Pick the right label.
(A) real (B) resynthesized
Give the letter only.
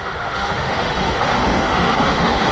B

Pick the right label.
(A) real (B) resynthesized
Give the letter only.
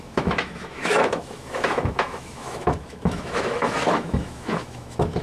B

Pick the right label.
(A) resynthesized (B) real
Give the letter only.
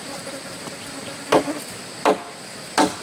B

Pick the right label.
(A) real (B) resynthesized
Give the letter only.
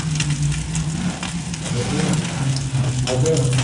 A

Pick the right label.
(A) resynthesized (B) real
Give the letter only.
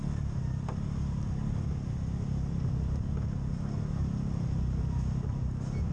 B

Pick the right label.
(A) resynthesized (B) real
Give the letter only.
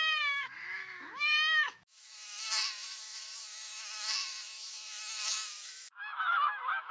A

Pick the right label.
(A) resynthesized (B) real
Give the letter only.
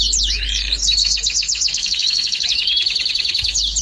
A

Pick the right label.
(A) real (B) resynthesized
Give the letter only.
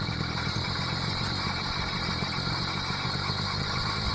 A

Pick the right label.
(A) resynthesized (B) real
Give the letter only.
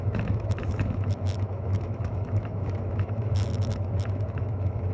A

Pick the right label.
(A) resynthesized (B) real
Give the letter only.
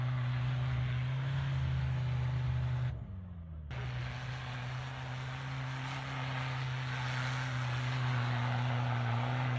B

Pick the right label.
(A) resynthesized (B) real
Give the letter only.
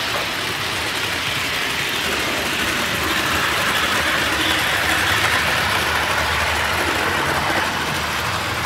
B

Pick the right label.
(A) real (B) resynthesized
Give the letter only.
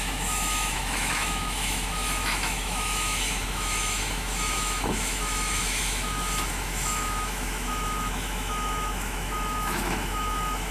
B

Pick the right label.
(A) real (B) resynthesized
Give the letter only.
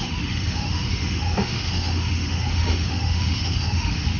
B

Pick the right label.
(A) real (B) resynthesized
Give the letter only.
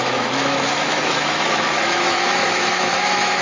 B